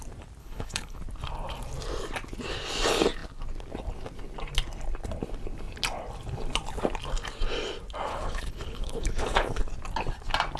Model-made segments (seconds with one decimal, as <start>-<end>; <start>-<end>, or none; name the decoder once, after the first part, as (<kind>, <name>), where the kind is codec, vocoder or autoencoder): 0.4-1.0 (codec, HILCodec); 8.1-9.6